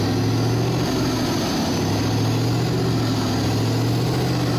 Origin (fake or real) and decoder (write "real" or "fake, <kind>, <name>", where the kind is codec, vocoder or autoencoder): real